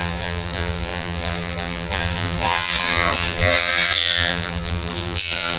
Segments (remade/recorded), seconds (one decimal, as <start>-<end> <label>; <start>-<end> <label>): 0.0-5.6 remade